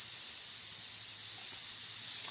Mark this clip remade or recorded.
recorded